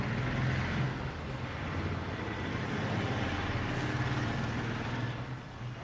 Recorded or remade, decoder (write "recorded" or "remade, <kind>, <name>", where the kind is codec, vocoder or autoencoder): recorded